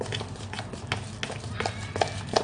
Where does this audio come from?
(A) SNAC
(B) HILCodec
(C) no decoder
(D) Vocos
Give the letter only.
C